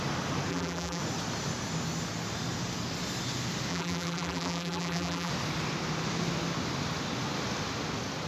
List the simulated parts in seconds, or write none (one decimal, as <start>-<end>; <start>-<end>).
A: 0.5-1.0; 3.7-5.3